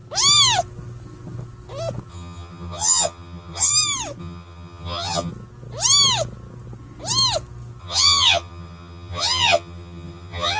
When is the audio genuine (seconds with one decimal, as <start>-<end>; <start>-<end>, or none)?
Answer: 0.0-2.1; 3.7-4.2; 5.3-7.8